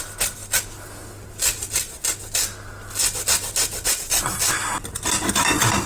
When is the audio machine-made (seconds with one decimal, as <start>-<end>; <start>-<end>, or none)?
none